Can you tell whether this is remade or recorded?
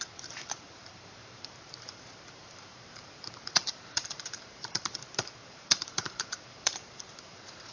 remade